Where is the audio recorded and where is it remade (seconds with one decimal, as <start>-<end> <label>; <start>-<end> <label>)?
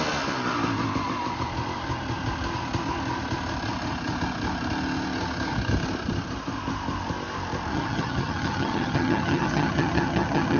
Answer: 0.0-7.7 recorded; 7.7-10.6 remade